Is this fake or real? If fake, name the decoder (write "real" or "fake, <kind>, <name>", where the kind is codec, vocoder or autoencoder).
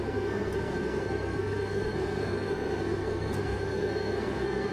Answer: fake, codec, SNAC